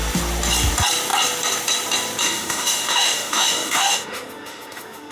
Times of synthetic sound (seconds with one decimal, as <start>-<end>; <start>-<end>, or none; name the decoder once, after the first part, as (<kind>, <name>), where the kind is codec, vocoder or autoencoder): 2.2-5.1 (autoencoder, DAC-VAE)